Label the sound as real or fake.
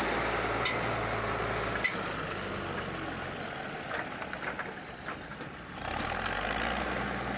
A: real